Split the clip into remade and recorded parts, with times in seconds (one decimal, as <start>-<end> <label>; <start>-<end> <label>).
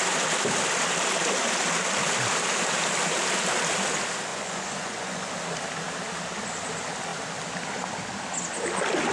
0.0-4.3 recorded; 4.3-5.3 remade; 5.3-9.1 recorded